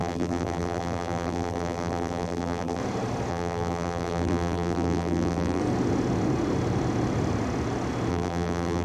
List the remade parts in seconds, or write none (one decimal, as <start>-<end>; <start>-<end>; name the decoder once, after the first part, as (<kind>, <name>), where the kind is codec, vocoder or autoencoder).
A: 0.0-2.8 (vocoder, BigVGAN v2); 3.3-5.6; 8.1-8.8